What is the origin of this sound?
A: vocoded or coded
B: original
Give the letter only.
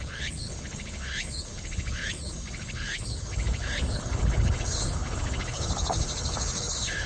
A